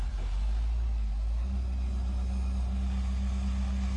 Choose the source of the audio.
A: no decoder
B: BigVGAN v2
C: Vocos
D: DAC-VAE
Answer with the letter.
A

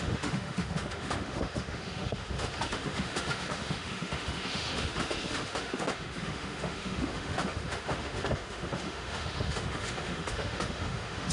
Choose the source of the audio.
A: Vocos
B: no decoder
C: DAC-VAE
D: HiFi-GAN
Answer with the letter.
C